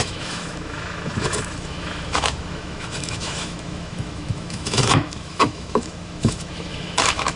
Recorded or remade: remade